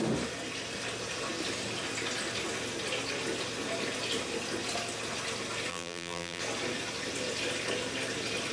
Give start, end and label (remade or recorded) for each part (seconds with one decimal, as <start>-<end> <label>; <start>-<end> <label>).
0.0-5.7 recorded; 5.7-6.4 remade; 6.4-8.5 recorded